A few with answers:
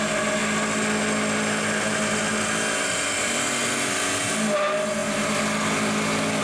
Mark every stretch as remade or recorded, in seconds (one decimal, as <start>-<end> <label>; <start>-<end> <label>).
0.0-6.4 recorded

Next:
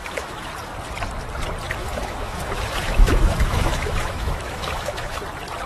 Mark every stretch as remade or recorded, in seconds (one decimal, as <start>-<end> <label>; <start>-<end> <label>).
0.0-0.5 remade; 0.5-1.8 recorded; 1.8-5.2 remade; 5.2-5.7 recorded

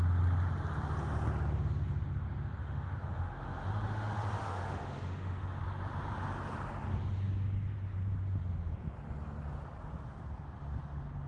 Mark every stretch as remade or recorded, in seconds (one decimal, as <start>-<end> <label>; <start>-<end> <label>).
0.0-2.6 recorded; 2.6-5.6 remade; 5.6-11.3 recorded

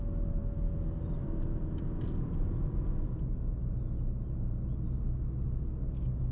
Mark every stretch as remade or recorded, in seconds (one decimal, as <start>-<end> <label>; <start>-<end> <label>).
0.0-6.3 recorded

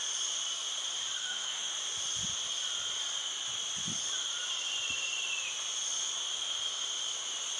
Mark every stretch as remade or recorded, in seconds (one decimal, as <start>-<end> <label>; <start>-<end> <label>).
0.0-1.2 recorded; 1.2-1.7 remade; 1.7-7.6 recorded

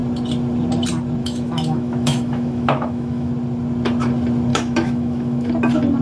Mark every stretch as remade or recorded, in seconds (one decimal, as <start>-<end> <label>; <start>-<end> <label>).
0.0-1.2 recorded; 1.2-3.3 remade; 3.3-4.5 recorded; 4.5-5.5 remade; 5.5-6.0 recorded